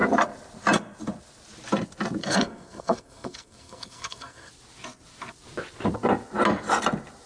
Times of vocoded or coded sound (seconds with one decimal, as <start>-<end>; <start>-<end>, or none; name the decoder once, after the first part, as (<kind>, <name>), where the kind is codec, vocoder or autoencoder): 2.2-4.5 (codec, SNAC)